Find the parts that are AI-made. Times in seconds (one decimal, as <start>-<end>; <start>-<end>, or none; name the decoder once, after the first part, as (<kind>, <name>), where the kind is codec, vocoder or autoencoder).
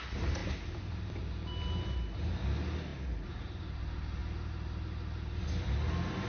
0.4-1.2 (vocoder, BigVGAN v2); 2.9-3.8